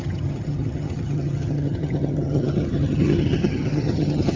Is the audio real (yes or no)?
no